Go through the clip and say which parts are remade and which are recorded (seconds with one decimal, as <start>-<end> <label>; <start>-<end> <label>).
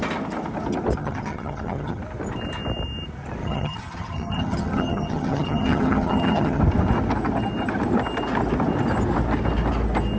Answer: 0.0-1.0 recorded; 1.0-2.0 remade; 2.0-3.4 recorded; 3.4-6.6 remade; 6.6-10.2 recorded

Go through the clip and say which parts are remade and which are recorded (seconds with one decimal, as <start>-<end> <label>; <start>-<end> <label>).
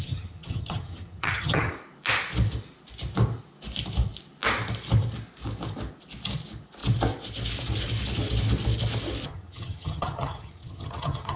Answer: 0.0-1.7 remade; 1.7-9.3 recorded; 9.3-11.4 remade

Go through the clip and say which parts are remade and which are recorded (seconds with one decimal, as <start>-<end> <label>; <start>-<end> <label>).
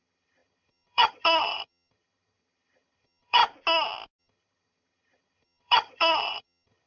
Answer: 0.0-3.4 remade; 3.4-4.2 recorded; 4.2-6.9 remade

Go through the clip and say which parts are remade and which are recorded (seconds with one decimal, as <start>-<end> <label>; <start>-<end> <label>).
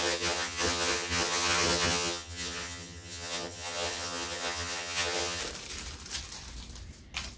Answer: 0.0-5.4 remade; 5.4-7.4 recorded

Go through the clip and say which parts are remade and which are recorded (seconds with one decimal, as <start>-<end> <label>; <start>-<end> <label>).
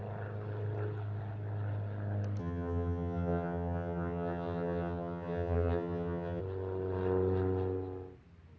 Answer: 0.0-2.4 recorded; 2.4-6.4 remade; 6.4-8.6 recorded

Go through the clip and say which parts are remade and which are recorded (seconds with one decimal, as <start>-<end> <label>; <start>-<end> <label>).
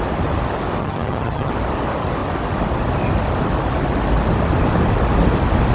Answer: 0.0-0.8 recorded; 0.8-1.5 remade; 1.5-5.7 recorded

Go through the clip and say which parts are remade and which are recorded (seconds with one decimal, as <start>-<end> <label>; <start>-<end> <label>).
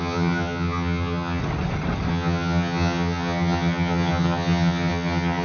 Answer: 0.0-1.4 remade; 1.4-2.1 recorded; 2.1-5.4 remade